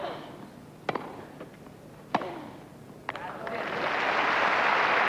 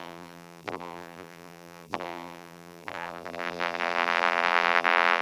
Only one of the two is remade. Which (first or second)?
second